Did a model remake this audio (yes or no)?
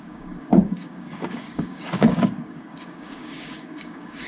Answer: yes